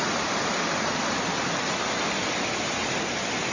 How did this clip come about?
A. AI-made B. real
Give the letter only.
B